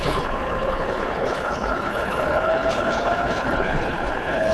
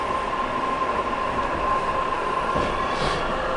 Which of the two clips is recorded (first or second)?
second